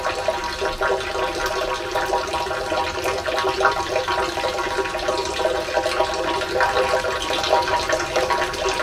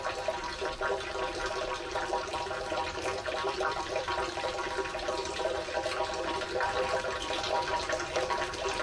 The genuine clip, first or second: first